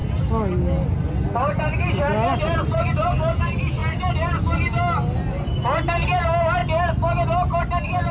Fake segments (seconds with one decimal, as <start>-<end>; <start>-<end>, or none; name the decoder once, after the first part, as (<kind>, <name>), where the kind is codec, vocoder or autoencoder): none